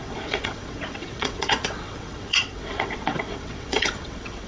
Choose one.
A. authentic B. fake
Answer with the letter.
B